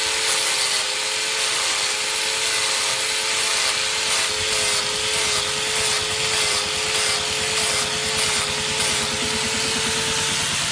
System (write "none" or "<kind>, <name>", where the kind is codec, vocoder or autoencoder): none